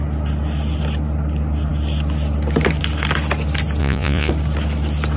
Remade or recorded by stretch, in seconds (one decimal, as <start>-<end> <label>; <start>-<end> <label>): 0.0-3.8 recorded; 3.8-4.3 remade; 4.3-5.2 recorded